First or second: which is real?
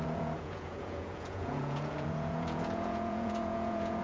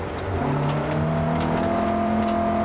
second